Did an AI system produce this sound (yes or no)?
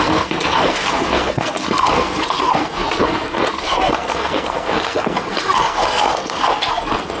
yes